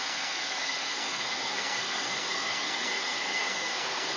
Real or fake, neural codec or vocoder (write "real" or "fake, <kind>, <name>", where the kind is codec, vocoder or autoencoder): fake, codec, SNAC